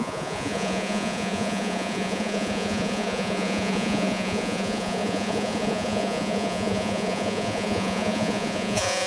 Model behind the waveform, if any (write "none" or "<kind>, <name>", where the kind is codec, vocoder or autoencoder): vocoder, Vocos